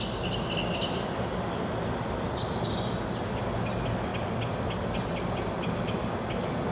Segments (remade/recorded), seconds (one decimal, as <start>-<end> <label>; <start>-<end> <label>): 0.0-6.7 recorded